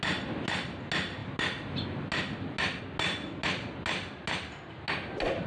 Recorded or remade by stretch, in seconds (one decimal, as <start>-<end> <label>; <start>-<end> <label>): 0.0-5.5 recorded